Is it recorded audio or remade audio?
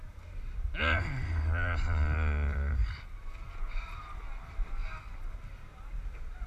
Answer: recorded